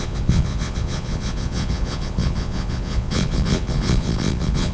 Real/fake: fake